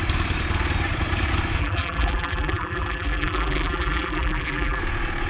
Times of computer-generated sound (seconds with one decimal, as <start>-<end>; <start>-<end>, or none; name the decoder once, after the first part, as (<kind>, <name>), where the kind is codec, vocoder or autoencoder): 1.6-4.8 (vocoder, BigVGAN v2)